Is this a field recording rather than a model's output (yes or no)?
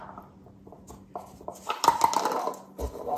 yes